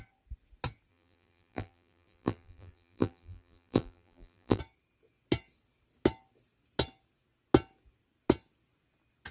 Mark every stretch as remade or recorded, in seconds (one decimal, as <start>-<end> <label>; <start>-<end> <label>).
0.0-0.9 recorded; 0.9-4.6 remade; 4.6-9.3 recorded